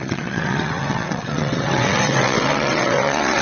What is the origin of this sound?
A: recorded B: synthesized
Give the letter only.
B